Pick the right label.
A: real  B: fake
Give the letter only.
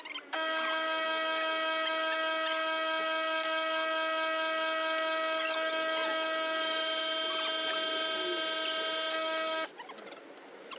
A